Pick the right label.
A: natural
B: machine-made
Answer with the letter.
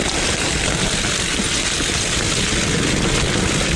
A